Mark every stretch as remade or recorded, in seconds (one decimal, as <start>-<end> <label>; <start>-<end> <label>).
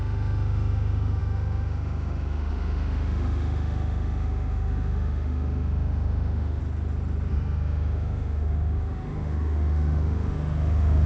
0.0-6.6 remade; 6.6-7.3 recorded; 7.3-11.1 remade